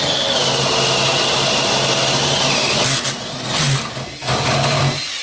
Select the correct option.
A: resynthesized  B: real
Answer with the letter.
B